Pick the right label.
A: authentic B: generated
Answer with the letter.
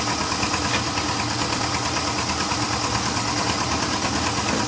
A